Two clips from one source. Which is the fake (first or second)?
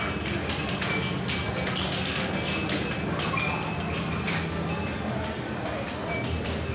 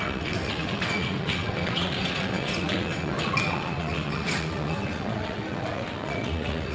second